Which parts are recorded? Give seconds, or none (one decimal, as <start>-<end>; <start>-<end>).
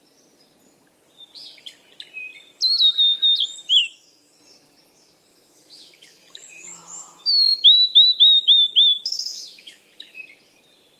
0.0-3.8; 4.4-5.3; 10.2-11.0